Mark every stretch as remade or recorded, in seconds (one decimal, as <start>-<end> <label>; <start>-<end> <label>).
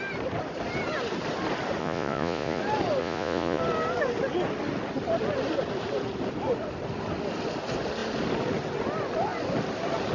0.0-1.8 recorded; 1.8-2.6 remade; 2.6-3.0 recorded; 3.0-3.6 remade; 3.6-10.1 recorded